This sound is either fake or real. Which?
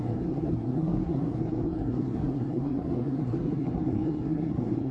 fake